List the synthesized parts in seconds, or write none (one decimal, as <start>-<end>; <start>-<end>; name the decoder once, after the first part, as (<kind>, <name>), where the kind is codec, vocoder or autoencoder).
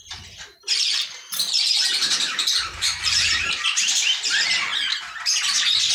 0.0-4.7 (vocoder, BigVGAN v2)